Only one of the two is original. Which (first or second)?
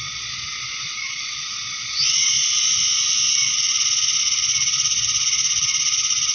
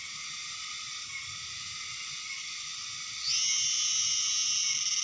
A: second